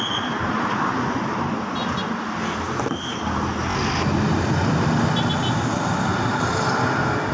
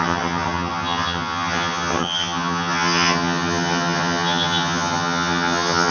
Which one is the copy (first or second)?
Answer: second